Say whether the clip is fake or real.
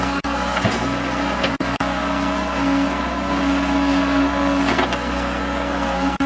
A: fake